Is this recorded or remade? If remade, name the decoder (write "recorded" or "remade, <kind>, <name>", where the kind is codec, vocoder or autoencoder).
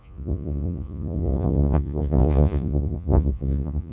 remade, vocoder, Vocos